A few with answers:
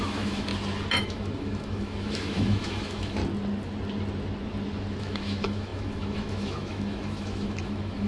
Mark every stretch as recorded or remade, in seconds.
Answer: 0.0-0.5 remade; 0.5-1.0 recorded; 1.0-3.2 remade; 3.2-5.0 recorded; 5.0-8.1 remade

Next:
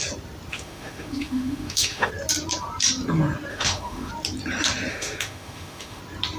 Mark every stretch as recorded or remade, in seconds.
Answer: 0.0-0.5 recorded; 0.5-2.1 remade; 2.1-3.5 recorded; 3.5-4.1 remade; 4.1-4.9 recorded; 4.9-6.0 remade; 6.0-6.4 recorded

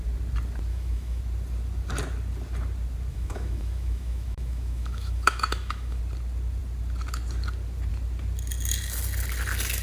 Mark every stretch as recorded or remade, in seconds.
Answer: 0.0-0.7 recorded; 0.7-1.2 remade; 1.2-3.1 recorded; 3.1-6.0 remade; 6.0-9.8 recorded

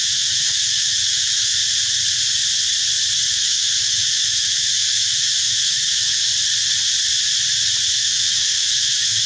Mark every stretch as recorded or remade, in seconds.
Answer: 0.0-1.6 remade; 1.6-3.3 recorded; 3.3-6.3 remade; 6.3-7.9 recorded; 7.9-9.3 remade